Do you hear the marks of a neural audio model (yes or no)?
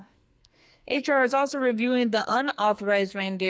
yes